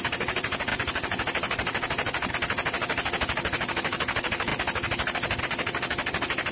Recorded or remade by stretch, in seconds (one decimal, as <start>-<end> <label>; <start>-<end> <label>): 0.0-6.5 recorded

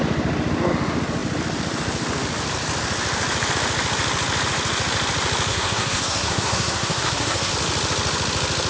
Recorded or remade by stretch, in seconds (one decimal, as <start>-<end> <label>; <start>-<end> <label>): 0.0-5.5 recorded; 5.5-7.5 remade; 7.5-8.7 recorded

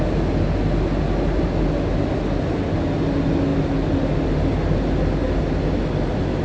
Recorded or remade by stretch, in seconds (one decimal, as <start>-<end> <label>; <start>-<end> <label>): 0.0-6.4 recorded

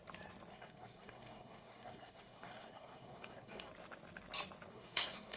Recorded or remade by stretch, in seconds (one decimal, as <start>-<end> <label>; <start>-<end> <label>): 0.0-0.5 recorded; 0.5-3.7 remade; 3.7-4.7 recorded; 4.7-5.4 remade

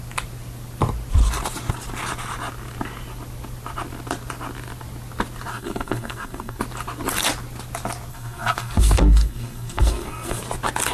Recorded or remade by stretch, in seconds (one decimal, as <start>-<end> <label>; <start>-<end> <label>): 0.0-5.5 recorded; 5.5-6.6 remade; 6.6-8.1 recorded; 8.1-10.4 remade; 10.4-10.9 recorded

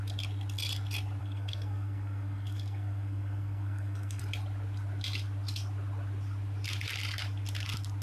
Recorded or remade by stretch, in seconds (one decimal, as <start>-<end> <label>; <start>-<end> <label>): 0.0-1.2 recorded; 1.2-4.2 remade; 4.2-8.0 recorded